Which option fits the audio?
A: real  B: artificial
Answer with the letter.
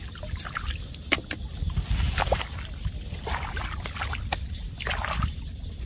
A